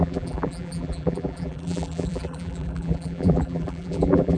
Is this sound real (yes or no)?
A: no